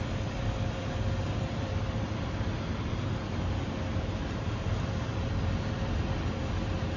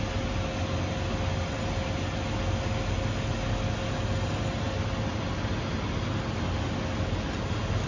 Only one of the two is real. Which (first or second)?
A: second